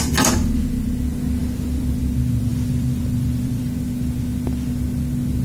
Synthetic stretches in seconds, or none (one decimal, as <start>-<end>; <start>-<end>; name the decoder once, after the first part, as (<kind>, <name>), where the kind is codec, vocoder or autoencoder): 1.4-2.0 (vocoder, BigVGAN v2); 2.5-3.6